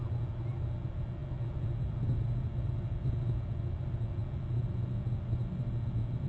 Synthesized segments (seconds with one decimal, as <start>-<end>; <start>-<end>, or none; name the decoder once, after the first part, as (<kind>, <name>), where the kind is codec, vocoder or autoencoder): none